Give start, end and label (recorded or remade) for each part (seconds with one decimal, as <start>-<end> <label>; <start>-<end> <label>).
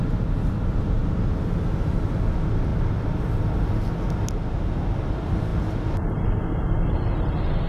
0.0-2.7 recorded; 2.7-3.7 remade; 3.7-7.7 recorded